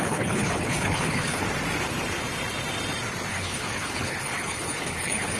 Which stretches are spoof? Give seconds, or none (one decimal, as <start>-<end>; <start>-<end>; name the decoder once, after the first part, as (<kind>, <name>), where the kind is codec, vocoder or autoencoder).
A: 0.0-1.4 (codec, HILCodec); 3.3-5.4